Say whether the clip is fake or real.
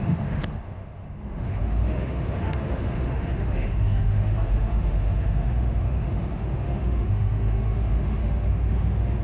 fake